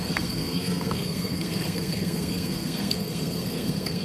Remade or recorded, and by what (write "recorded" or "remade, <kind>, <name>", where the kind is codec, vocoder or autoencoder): remade, codec, SNAC